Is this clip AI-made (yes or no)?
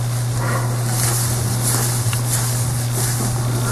no